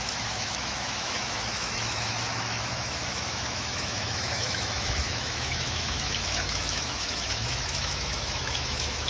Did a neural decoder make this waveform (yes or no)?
yes